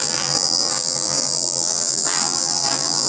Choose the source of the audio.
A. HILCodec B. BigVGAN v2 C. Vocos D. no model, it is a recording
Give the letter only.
B